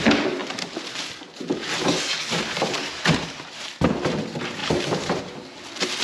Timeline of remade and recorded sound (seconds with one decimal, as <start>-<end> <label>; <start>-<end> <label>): 0.0-0.4 recorded; 0.4-4.0 remade; 4.0-4.6 recorded; 4.6-5.2 remade; 5.2-6.0 recorded